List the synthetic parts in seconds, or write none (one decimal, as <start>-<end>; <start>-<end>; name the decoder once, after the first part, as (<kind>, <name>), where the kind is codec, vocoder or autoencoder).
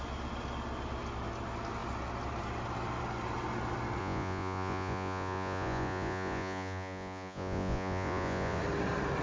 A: 4.0-8.6 (vocoder, Vocos)